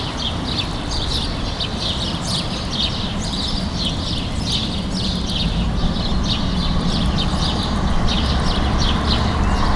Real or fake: fake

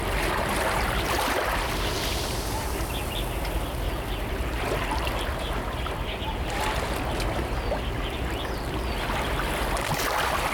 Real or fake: real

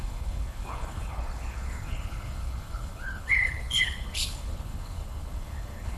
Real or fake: fake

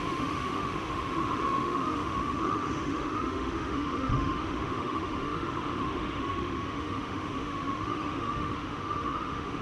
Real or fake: fake